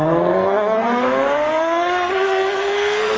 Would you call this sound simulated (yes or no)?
yes